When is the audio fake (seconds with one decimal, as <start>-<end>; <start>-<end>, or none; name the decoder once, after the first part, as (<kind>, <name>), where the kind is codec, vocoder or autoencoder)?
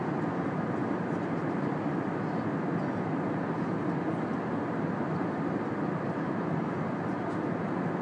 none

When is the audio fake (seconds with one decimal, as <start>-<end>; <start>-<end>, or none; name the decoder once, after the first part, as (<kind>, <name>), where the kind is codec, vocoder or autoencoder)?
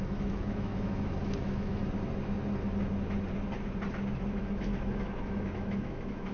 0.0-1.8 (autoencoder, DAC-VAE); 4.4-6.3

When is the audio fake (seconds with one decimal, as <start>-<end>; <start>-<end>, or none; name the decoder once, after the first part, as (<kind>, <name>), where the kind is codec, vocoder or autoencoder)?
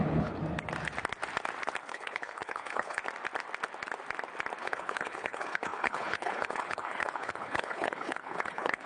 0.0-0.4 (codec, HILCodec); 1.8-3.0; 4.6-8.9